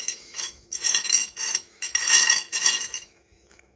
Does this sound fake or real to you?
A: fake